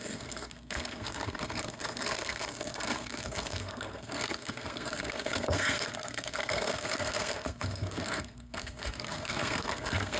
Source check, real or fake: fake